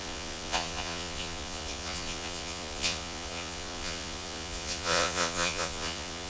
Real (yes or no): no